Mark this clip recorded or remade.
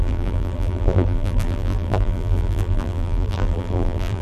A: remade